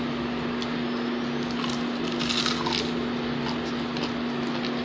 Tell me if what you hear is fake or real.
real